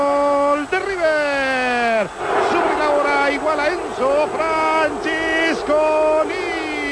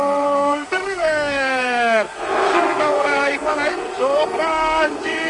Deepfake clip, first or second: second